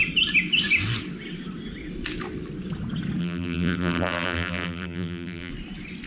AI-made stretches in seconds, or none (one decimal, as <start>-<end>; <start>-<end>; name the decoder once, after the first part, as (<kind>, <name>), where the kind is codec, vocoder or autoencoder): 3.2-5.5 (vocoder, BigVGAN v2)